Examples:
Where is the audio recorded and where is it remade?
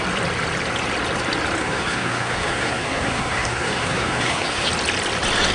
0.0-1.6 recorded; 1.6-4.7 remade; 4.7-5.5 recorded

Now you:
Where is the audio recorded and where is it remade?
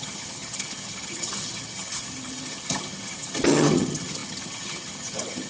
0.0-5.5 remade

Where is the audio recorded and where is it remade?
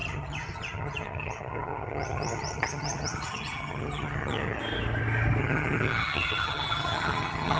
0.0-4.6 remade; 4.6-5.4 recorded; 5.4-7.6 remade